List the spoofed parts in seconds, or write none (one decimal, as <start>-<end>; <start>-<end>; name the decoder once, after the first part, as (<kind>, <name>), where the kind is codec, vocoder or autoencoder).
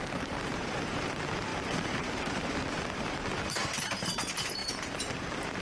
0.0-5.6 (vocoder, BigVGAN v2)